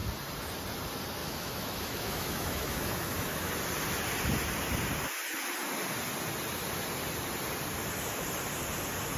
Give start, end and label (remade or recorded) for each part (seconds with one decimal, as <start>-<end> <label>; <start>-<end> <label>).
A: 0.0-1.2 recorded; 1.2-3.5 remade; 3.5-9.2 recorded